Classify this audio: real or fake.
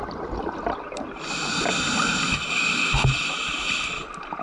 real